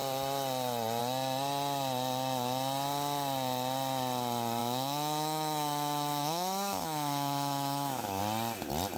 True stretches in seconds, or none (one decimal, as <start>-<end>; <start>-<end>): 0.0-4.6; 8.2-9.0